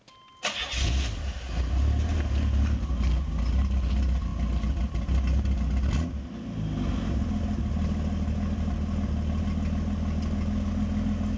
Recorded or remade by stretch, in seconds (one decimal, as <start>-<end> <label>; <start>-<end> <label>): 0.0-11.4 recorded